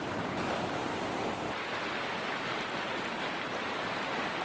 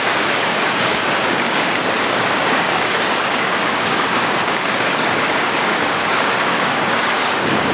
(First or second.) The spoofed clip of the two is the second